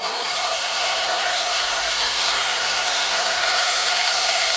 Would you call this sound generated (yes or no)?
yes